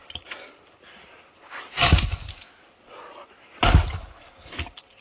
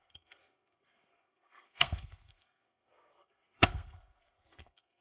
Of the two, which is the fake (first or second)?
second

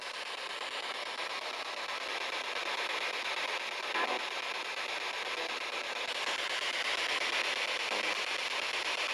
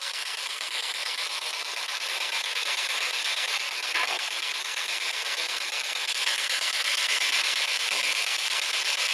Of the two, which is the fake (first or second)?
second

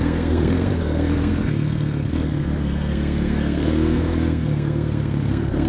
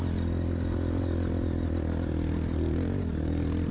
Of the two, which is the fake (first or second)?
first